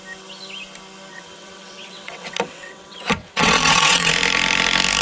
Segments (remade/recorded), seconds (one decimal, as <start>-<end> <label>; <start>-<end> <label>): 0.0-1.1 recorded; 1.1-4.1 remade; 4.1-5.0 recorded